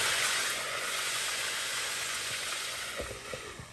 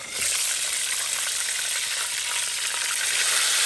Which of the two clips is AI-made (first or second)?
first